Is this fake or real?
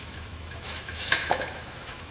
fake